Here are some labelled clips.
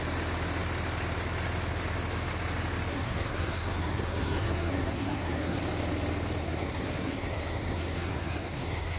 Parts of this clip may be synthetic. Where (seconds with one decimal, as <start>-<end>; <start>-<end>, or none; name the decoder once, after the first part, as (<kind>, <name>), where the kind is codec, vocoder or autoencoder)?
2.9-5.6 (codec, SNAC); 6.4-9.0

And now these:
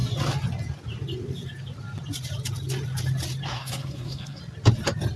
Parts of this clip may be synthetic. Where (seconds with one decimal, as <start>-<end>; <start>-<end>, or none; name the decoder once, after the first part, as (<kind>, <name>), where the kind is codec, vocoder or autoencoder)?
3.5-4.4 (codec, SNAC)

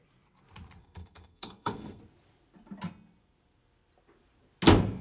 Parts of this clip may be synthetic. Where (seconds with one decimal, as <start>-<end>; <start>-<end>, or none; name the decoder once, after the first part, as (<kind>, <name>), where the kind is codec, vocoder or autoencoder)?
0.8-2.0 (codec, SNAC)

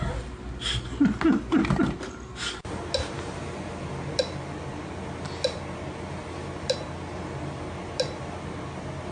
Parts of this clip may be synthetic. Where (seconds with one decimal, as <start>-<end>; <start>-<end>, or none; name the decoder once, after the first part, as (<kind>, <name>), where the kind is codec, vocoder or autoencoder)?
none

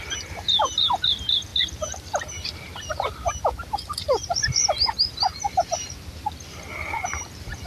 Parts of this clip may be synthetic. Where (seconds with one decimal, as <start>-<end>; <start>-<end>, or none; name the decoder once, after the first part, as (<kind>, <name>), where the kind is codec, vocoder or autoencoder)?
none

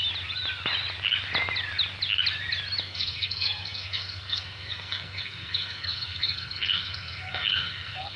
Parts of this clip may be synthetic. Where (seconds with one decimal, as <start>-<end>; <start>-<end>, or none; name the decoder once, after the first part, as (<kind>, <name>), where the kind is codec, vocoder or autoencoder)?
2.8-8.2 (codec, SNAC)

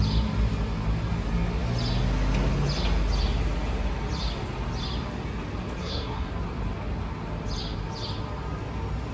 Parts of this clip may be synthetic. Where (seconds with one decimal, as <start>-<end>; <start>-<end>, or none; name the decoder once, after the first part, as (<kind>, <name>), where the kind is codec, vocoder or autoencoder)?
5.8-6.3 (codec, SNAC)

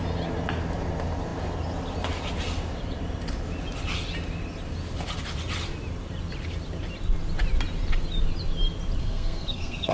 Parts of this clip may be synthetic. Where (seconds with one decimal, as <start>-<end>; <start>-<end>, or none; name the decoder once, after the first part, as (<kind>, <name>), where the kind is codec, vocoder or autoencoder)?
9.0-9.9 (codec, SNAC)